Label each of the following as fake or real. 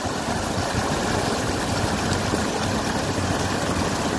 real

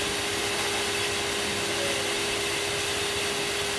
real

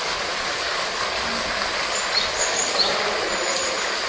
real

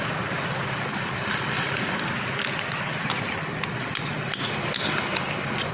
real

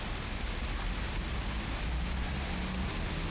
real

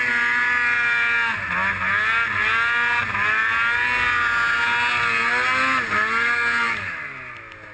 real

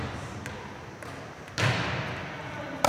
real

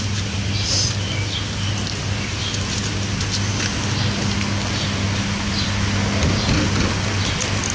real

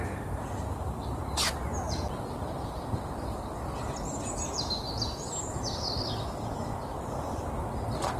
real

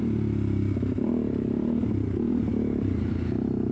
fake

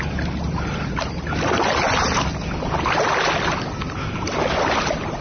real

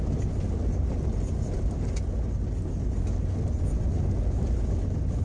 real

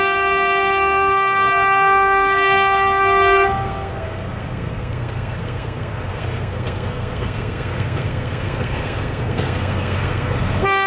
fake